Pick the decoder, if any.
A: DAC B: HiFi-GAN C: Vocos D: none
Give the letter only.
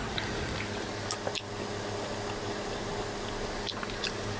D